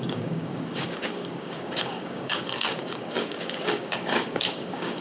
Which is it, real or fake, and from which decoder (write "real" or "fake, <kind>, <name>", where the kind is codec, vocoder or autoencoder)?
fake, codec, DAC